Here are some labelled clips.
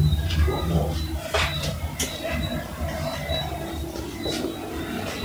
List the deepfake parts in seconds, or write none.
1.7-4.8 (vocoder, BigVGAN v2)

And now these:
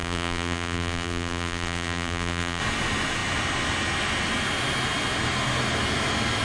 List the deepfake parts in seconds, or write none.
0.0-2.6 (vocoder, BigVGAN v2)

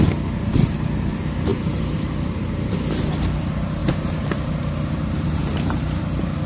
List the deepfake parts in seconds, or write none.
1.5-2.7 (vocoder, BigVGAN v2); 3.8-6.0

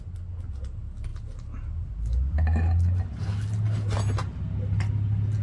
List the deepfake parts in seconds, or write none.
none

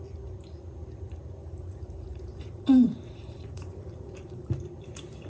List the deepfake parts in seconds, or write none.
1.4-4.6 (vocoder, BigVGAN v2)

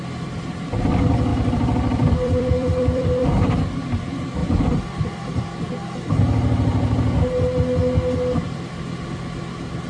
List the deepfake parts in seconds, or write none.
1.3-3.4 (vocoder, BigVGAN v2); 4.4-5.4

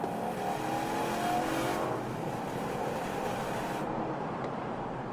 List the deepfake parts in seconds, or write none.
1.7-5.1 (vocoder, BigVGAN v2)